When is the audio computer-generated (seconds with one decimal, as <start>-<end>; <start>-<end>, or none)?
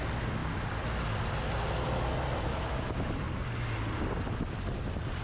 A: 2.5-3.1